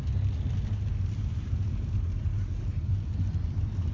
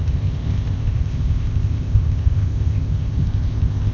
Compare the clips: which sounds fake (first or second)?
second